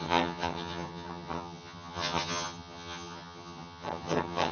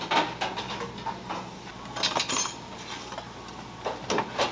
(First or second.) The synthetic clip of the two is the first